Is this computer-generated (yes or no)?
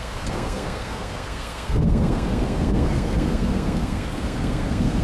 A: yes